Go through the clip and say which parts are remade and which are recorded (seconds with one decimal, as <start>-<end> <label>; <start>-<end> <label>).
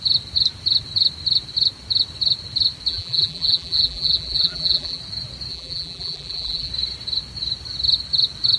0.0-2.9 recorded; 2.9-5.0 remade; 5.0-5.5 recorded; 5.5-6.7 remade; 6.7-8.6 recorded